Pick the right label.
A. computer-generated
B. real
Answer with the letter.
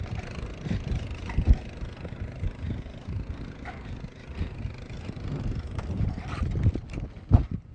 B